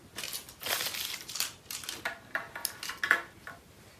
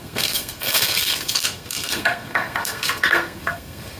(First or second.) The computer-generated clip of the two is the second